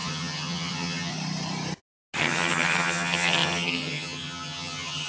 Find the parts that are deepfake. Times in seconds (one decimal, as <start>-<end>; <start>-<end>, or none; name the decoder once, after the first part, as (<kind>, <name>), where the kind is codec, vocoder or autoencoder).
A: 0.0-1.1 (vocoder, HiFi-GAN); 2.2-5.1